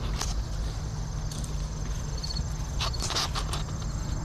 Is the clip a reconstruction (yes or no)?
no